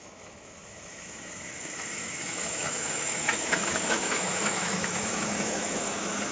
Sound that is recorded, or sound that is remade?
remade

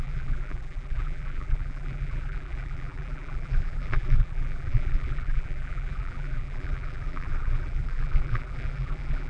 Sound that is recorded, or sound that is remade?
remade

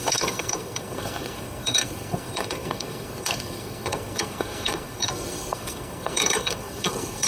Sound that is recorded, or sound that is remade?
remade